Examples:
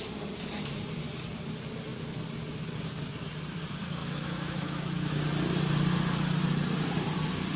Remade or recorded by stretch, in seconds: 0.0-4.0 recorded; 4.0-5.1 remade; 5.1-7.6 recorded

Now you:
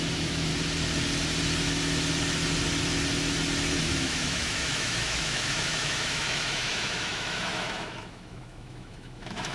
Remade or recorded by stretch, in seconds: 0.0-0.5 remade; 0.5-3.8 recorded; 3.8-9.5 remade

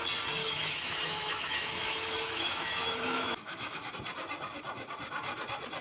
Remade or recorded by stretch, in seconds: 0.0-0.4 recorded; 0.4-3.9 remade; 3.9-5.8 recorded

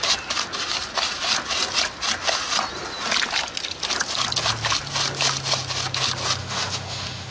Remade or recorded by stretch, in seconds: 0.0-6.4 recorded; 6.4-7.3 remade

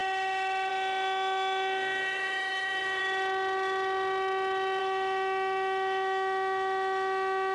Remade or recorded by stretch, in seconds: 0.0-0.7 recorded; 0.7-3.0 remade; 3.0-4.8 recorded; 4.8-7.5 remade

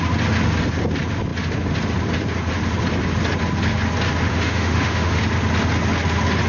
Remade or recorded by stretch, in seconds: 0.0-4.3 recorded; 4.3-5.2 remade; 5.2-6.5 recorded

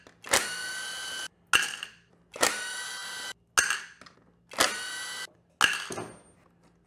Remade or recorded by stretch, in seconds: 0.0-6.9 recorded

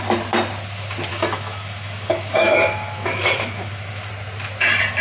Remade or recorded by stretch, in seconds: 0.0-1.1 recorded; 1.1-4.1 remade; 4.1-5.0 recorded